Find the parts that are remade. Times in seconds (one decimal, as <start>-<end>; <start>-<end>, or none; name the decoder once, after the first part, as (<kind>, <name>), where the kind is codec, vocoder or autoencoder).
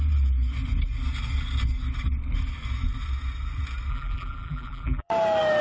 3.9-5.1 (vocoder, BigVGAN v2)